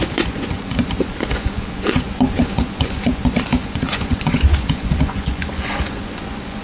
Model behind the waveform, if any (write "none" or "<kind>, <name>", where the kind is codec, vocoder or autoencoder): vocoder, Vocos